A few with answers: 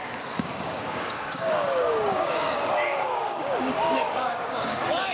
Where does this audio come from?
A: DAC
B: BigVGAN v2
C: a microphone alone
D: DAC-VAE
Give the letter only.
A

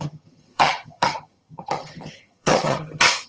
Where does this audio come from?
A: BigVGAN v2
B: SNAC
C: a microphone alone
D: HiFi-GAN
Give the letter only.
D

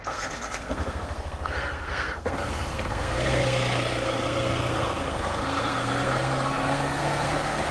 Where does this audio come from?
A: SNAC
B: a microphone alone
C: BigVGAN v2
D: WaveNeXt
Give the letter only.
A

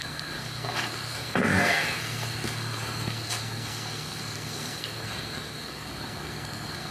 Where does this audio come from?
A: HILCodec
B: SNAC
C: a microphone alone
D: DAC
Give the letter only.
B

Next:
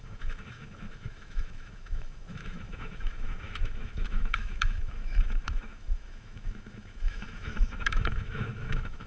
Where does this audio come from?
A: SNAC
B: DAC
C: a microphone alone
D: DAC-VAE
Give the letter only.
D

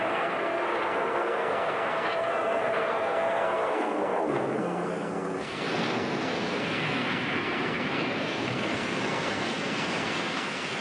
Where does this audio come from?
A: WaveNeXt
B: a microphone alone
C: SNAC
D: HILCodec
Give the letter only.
C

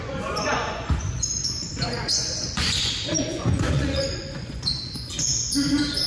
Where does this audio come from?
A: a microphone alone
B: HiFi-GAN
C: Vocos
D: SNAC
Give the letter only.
C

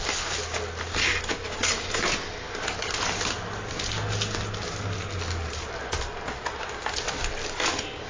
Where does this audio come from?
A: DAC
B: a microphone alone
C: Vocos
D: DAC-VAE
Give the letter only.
B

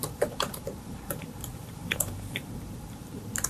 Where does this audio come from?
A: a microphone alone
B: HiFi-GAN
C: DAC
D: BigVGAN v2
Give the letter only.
D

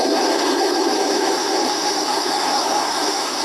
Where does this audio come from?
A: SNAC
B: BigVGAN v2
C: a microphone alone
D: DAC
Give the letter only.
A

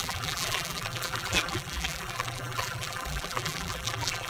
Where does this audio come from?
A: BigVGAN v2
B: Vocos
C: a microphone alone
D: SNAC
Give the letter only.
A